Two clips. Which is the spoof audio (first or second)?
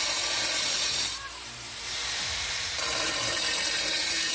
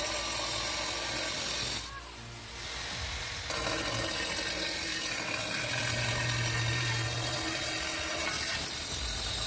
first